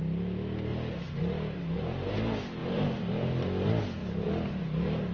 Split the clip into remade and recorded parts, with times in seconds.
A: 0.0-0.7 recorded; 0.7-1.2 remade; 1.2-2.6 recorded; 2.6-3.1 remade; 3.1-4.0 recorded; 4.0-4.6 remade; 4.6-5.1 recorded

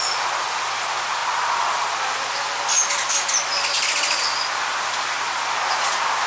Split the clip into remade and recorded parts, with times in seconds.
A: 0.0-6.3 recorded

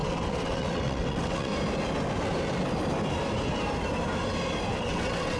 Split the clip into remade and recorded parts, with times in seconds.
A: 0.0-1.5 remade; 1.5-4.7 recorded; 4.7-5.4 remade

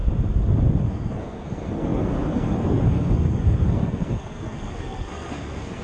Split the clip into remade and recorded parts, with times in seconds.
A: 0.0-0.8 recorded; 0.8-5.8 remade

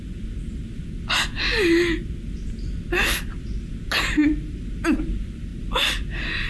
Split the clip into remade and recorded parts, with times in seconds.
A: 0.0-6.5 recorded

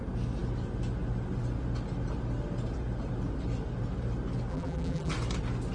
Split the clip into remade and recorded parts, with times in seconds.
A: 0.0-4.5 recorded; 4.5-5.1 remade; 5.1-5.7 recorded

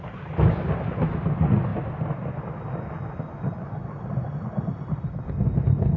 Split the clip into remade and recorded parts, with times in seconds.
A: 0.0-6.0 recorded